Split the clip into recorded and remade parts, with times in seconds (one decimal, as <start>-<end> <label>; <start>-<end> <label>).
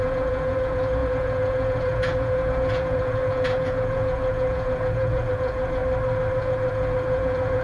0.0-5.8 remade; 5.8-6.4 recorded; 6.4-7.6 remade